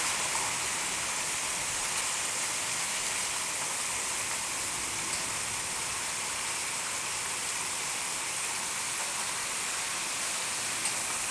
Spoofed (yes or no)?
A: no